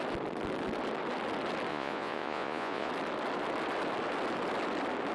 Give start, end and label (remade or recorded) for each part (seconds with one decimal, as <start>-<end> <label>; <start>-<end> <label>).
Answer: 0.0-1.7 recorded; 1.7-2.9 remade; 2.9-5.1 recorded